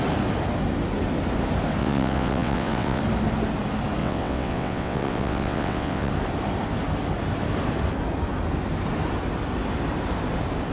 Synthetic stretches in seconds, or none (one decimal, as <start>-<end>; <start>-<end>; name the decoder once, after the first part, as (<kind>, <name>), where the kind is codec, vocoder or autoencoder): 1.8-3.0 (vocoder, WaveNeXt); 4.0-6.1